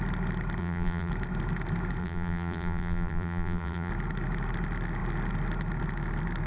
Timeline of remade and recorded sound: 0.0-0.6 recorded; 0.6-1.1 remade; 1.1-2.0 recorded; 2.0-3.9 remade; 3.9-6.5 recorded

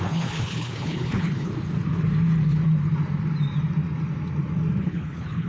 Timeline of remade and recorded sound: 0.0-1.5 remade; 1.5-4.8 recorded; 4.8-5.5 remade

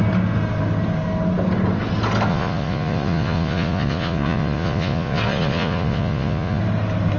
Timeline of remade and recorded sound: 0.0-2.3 recorded; 2.3-6.6 remade; 6.6-7.2 recorded

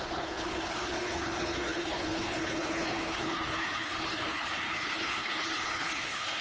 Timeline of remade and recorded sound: 0.0-6.4 remade